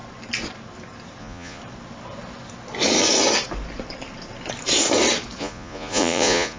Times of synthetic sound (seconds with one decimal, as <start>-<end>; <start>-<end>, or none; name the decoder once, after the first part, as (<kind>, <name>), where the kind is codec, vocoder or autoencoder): 1.2-1.6 (vocoder, Vocos); 5.4-6.6